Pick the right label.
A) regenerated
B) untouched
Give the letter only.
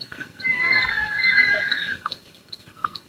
A